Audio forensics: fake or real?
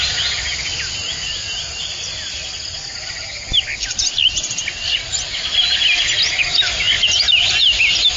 real